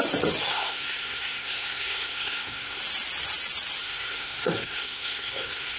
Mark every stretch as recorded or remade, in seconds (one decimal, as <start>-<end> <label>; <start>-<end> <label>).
0.0-0.5 recorded; 0.5-2.8 remade; 2.8-3.8 recorded; 3.8-5.8 remade